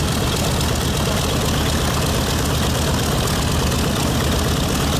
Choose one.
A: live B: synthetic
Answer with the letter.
A